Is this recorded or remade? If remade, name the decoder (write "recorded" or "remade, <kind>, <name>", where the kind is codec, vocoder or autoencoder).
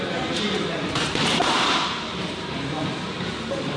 remade, vocoder, BigVGAN v2